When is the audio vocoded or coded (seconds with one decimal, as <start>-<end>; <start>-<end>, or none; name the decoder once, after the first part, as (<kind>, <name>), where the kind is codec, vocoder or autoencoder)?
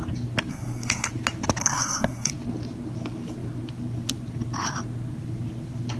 0.5-1.1 (codec, SNAC); 1.6-2.3